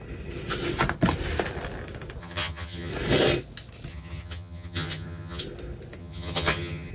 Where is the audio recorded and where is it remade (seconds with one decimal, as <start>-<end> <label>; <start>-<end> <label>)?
0.0-2.2 recorded; 2.2-2.9 remade; 2.9-3.9 recorded; 3.9-5.4 remade; 5.4-6.0 recorded; 6.0-6.9 remade